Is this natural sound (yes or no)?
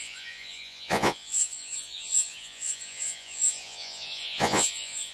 no